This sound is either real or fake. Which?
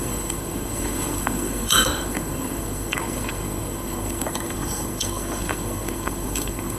fake